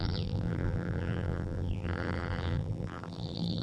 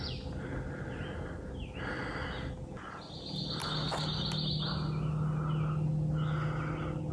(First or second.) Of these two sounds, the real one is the second